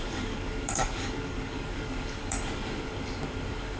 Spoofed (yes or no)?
yes